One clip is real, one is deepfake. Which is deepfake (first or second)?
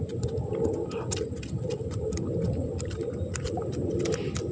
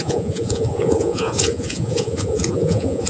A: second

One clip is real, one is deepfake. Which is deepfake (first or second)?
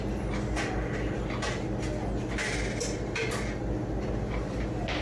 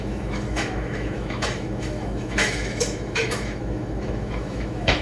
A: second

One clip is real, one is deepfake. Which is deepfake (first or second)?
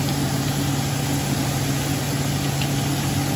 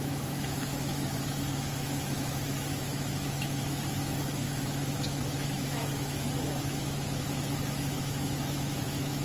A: second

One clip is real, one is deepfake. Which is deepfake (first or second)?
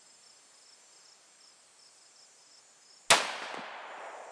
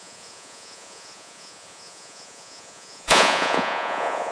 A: second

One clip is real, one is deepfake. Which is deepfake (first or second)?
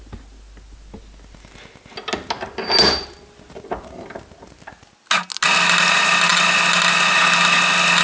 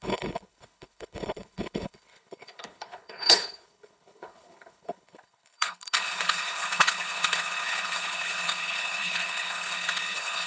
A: second